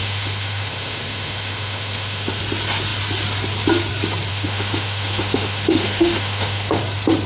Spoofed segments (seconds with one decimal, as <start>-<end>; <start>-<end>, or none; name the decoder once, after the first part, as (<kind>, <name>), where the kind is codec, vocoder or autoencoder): 0.0-2.4 (autoencoder, DAC-VAE); 4.3-6.8